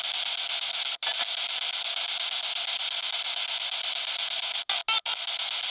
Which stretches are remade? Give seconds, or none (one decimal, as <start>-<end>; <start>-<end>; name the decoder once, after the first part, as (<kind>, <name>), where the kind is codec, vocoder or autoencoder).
none